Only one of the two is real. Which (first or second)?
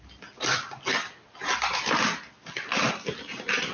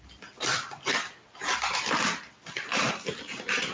first